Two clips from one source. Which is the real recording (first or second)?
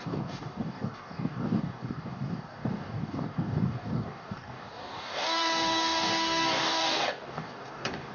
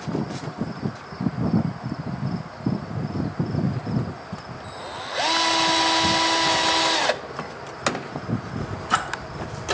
second